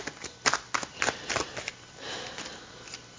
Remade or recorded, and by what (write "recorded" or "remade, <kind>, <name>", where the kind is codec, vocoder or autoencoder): recorded